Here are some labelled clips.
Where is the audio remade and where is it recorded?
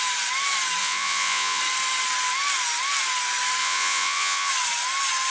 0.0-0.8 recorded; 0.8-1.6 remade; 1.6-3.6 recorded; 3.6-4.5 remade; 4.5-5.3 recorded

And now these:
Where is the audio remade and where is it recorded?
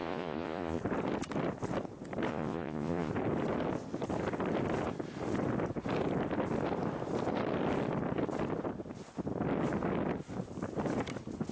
0.0-0.8 remade; 0.8-2.3 recorded; 2.3-3.1 remade; 3.1-11.5 recorded